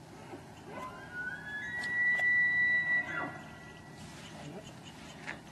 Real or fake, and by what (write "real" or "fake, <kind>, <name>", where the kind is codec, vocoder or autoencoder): real